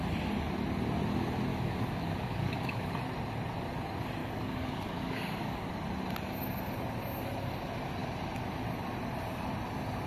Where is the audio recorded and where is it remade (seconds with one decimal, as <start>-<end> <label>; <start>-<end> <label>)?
0.0-1.5 recorded; 1.5-2.9 remade; 2.9-4.2 recorded; 4.2-5.7 remade; 5.7-10.1 recorded